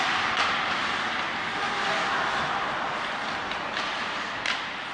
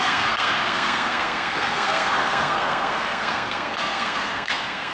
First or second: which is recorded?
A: first